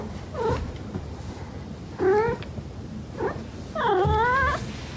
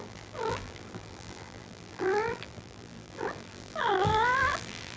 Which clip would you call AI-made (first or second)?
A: second